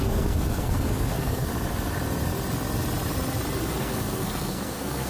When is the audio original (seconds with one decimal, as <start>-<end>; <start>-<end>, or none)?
1.5-3.8